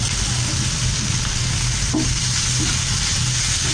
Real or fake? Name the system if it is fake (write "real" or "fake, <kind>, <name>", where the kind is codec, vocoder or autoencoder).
real